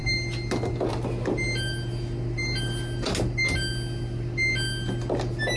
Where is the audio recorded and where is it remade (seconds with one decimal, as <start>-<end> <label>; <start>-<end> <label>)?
0.0-5.6 recorded